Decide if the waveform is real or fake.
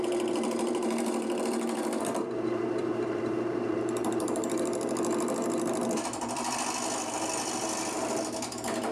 fake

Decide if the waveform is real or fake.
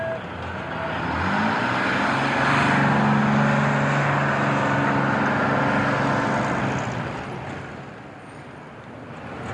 real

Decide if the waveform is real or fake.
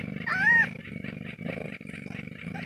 fake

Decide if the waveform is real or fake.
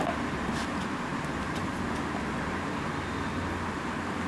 real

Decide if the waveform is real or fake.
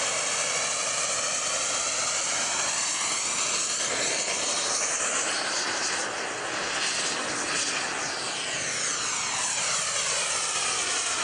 real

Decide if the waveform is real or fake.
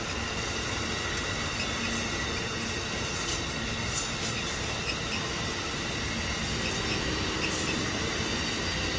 real